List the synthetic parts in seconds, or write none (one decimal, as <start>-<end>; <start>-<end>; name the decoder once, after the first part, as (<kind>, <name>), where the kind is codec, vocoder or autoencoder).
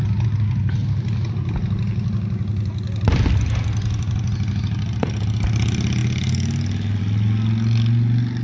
none